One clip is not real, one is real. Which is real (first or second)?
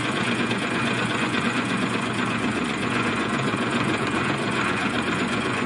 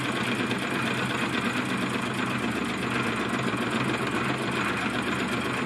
second